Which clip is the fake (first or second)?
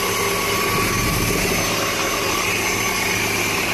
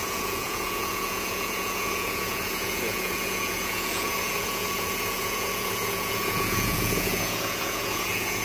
second